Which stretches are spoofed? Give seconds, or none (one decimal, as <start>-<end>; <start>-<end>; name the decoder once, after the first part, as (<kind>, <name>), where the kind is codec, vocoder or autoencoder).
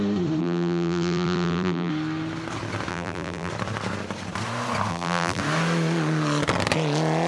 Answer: 0.4-1.9 (vocoder, BigVGAN v2); 2.9-3.5; 4.9-5.4